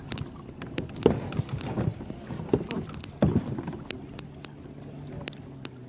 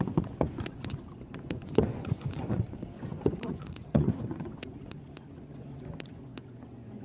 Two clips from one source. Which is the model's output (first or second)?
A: second